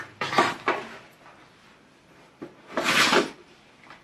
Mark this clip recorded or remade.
recorded